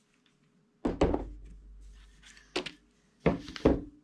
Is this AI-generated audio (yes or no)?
no